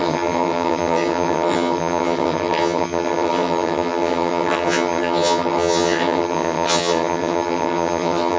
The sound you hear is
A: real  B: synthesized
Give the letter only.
B